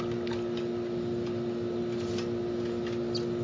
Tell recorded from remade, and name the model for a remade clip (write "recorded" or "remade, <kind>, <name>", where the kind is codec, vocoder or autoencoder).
recorded